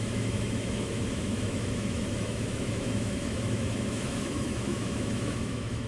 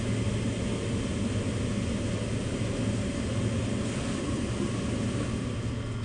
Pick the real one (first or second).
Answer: second